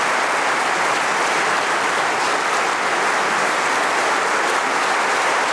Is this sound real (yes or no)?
yes